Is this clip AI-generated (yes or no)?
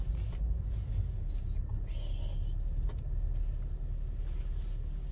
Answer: no